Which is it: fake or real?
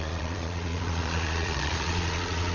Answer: fake